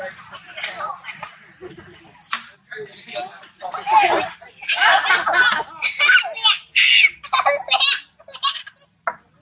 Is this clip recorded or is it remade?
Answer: recorded